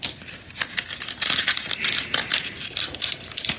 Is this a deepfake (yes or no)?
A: no